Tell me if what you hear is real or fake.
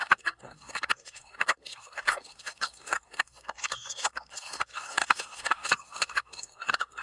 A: fake